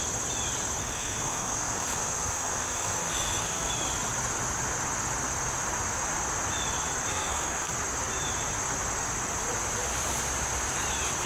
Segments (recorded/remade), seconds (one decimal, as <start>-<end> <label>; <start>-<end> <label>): 0.0-0.8 recorded; 0.8-3.7 remade; 3.7-7.1 recorded; 7.1-7.7 remade; 7.7-11.3 recorded